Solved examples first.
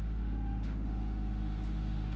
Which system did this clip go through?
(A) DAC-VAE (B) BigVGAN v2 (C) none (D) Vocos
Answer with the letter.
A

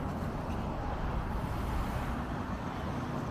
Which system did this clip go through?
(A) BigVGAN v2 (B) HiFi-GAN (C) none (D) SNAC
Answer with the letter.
C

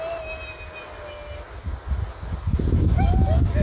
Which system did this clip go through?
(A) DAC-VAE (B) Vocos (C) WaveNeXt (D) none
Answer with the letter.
D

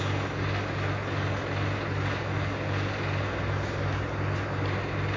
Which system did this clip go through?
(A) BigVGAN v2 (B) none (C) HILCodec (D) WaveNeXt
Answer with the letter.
B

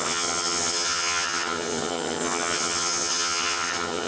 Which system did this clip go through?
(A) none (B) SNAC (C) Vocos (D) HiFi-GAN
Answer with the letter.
D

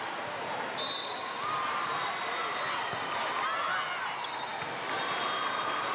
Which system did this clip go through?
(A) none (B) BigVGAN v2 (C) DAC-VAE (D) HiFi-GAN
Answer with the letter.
A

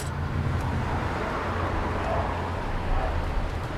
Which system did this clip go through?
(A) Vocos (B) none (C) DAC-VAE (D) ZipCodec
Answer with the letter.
B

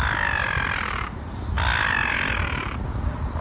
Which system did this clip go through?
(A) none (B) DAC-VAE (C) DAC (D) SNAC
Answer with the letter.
A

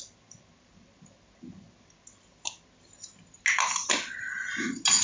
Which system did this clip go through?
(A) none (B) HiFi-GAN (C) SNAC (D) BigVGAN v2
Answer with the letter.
A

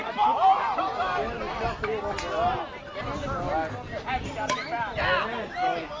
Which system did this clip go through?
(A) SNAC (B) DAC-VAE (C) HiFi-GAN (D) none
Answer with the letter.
D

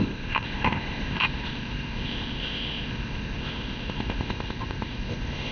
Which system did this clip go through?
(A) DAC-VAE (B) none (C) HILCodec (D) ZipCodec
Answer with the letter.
D